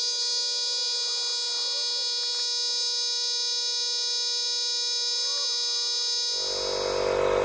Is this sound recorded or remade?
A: recorded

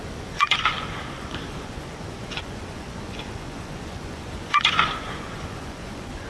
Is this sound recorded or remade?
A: remade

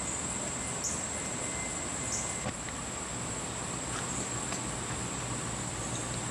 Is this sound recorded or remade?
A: recorded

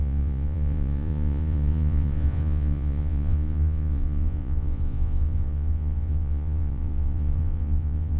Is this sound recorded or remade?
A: remade